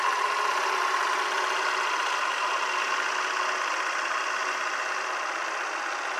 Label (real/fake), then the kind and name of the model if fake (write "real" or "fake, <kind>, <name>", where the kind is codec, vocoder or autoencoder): real